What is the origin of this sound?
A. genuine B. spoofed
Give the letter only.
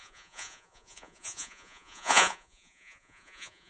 B